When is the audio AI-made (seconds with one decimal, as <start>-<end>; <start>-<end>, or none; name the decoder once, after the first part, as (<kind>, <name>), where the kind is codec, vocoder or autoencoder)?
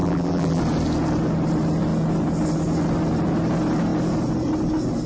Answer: 0.0-0.6 (vocoder, BigVGAN v2)